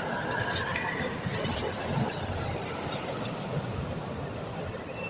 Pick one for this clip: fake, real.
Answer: real